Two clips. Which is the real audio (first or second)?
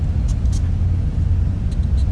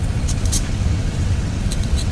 first